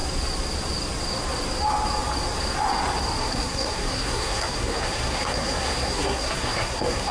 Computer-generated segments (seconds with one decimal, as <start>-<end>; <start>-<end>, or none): 3.2-7.1